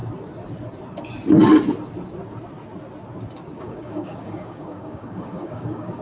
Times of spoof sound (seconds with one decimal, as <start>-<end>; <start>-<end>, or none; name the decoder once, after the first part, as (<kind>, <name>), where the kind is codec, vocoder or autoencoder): 3.6-6.0 (codec, DAC)